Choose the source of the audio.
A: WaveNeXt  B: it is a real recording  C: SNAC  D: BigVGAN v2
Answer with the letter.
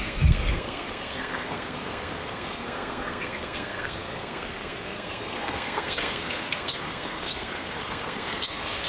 C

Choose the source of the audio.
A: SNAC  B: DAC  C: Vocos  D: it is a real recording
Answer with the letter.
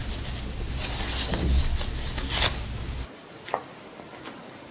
D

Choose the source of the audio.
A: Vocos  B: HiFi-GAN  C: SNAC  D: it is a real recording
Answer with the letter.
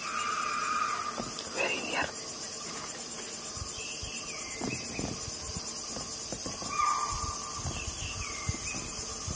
D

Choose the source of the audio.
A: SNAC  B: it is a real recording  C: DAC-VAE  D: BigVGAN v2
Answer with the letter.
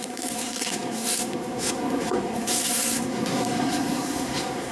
A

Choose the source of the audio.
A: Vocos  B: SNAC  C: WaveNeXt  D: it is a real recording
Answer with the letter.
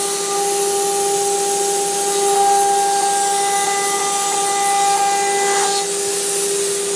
D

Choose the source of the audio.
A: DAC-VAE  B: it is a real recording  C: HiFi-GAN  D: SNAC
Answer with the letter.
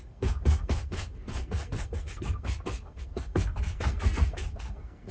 D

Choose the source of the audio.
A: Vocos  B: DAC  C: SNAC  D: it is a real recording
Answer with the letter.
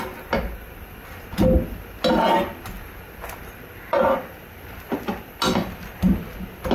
D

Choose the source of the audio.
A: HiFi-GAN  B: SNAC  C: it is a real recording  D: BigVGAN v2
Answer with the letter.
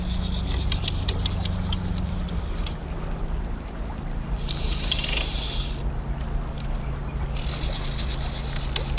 C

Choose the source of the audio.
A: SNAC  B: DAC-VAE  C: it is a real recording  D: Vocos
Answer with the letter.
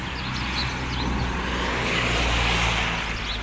C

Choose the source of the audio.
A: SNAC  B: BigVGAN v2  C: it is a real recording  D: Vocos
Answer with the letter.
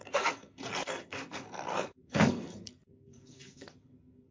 A